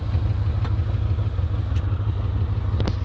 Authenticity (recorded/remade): recorded